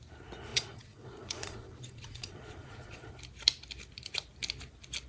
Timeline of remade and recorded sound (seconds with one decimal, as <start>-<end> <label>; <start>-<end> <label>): 0.0-0.5 recorded; 0.5-3.1 remade; 3.1-5.1 recorded